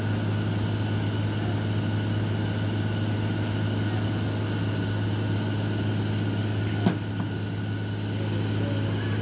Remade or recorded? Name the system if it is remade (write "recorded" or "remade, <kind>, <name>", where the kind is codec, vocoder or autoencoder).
recorded